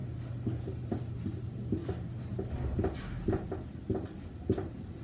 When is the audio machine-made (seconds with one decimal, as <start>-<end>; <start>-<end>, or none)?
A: none